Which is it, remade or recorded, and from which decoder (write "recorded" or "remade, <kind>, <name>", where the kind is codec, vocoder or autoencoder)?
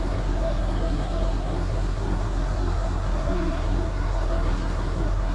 remade, codec, SNAC